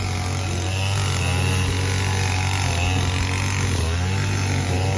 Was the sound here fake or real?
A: real